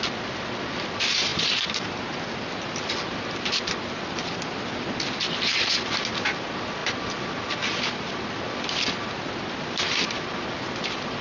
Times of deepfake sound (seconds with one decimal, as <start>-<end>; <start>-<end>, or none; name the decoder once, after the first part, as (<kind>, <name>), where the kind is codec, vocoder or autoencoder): none